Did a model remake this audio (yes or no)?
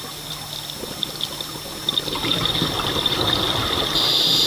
no